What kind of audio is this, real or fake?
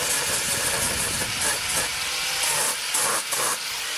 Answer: real